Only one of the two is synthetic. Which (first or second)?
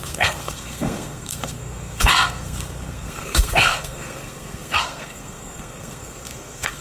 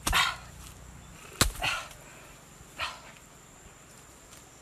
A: first